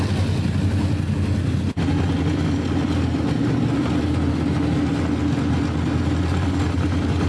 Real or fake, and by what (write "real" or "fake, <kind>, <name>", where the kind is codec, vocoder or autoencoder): real